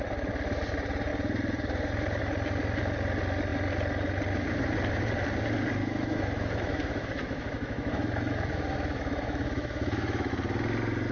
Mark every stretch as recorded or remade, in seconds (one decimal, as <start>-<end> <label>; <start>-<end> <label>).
0.0-5.8 recorded; 5.8-10.3 remade; 10.3-11.1 recorded